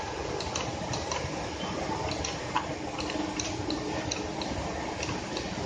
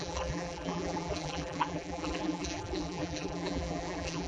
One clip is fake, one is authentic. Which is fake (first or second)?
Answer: second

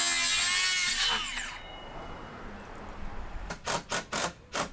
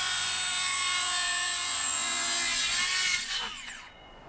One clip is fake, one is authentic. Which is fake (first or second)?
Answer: second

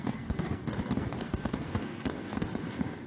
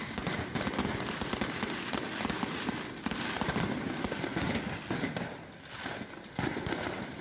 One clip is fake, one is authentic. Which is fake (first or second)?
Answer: first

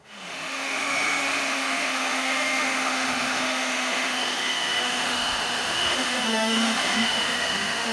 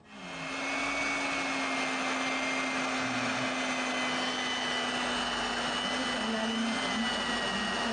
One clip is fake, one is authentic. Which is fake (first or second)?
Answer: first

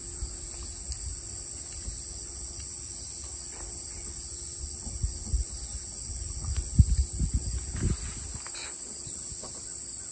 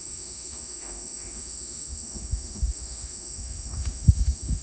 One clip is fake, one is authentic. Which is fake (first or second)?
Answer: second